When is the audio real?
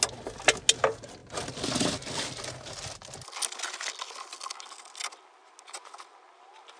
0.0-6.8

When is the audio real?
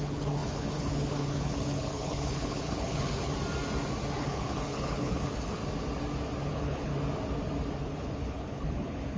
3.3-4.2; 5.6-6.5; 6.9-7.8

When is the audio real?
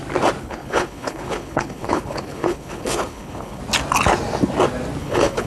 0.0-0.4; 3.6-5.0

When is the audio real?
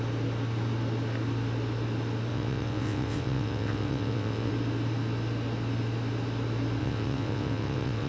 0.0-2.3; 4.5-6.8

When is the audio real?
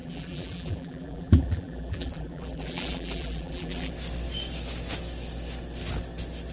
3.9-6.5